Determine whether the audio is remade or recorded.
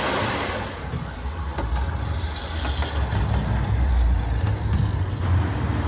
recorded